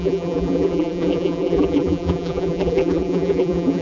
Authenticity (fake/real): fake